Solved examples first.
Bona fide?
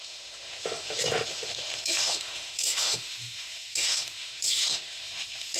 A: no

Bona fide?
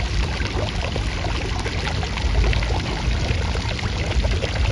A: yes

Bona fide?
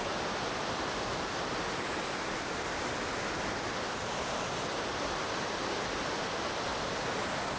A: yes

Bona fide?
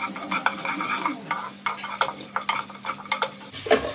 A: yes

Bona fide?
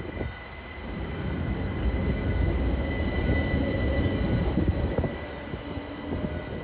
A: yes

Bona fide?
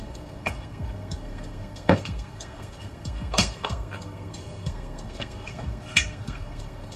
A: no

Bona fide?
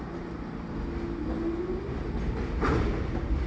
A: yes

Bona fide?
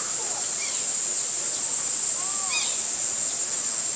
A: yes